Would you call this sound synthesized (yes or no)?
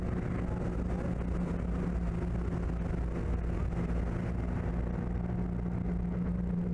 no